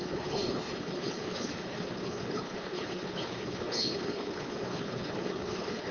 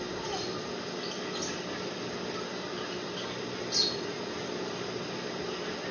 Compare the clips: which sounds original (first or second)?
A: second